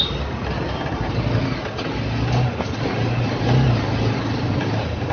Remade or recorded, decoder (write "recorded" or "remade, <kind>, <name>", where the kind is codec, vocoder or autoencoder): recorded